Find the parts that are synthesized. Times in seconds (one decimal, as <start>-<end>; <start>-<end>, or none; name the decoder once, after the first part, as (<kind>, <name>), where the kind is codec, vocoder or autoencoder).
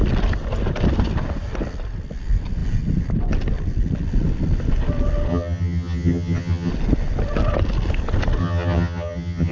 5.3-6.7 (vocoder, HiFi-GAN); 8.4-9.5